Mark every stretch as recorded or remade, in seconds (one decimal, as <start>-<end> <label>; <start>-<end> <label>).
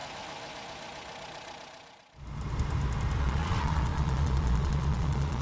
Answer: 0.0-3.2 recorded; 3.2-5.4 remade